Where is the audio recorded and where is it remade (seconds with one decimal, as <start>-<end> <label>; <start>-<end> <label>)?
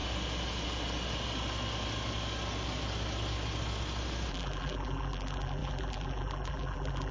0.0-4.3 recorded; 4.3-7.1 remade